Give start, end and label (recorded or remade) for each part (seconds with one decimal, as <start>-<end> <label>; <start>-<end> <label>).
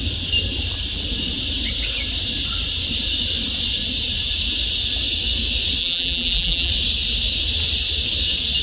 0.0-5.8 recorded; 5.8-6.7 remade; 6.7-8.6 recorded